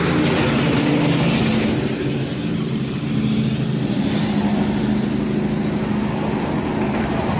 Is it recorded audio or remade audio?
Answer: recorded